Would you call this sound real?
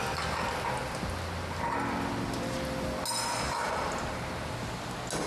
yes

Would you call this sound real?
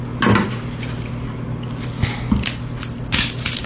yes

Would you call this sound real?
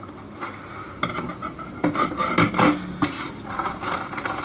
yes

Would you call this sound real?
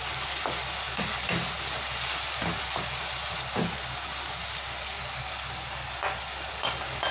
yes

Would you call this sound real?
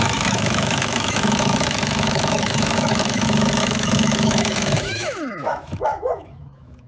no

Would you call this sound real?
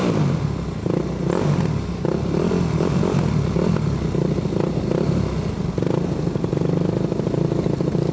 yes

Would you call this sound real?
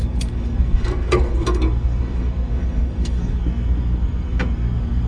no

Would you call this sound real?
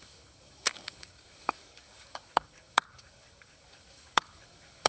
no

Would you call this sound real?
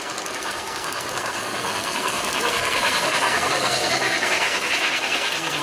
no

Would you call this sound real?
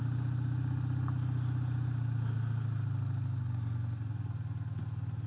yes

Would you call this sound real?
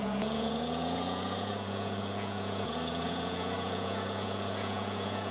no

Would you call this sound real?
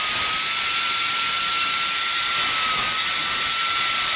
yes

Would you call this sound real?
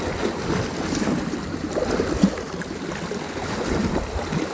yes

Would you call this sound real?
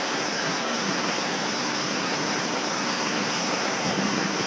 no